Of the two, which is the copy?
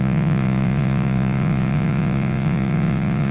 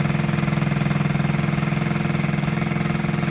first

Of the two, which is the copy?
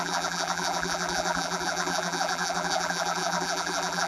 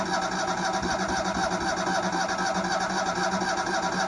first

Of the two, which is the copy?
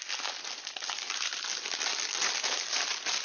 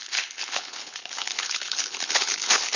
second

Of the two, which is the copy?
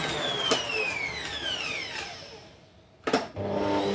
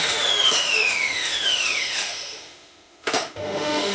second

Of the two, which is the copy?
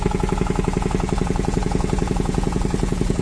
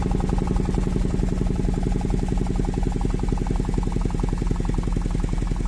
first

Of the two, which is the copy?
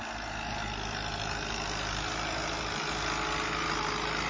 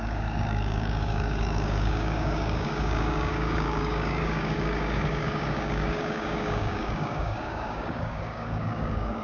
second